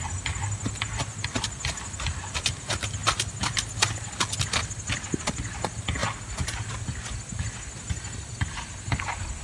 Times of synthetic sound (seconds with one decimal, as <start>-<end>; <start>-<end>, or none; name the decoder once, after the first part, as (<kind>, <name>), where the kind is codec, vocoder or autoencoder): none